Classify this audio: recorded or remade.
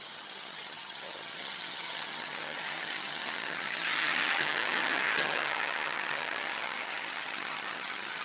remade